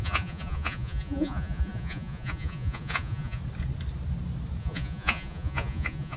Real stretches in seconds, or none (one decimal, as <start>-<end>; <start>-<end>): 3.4-4.6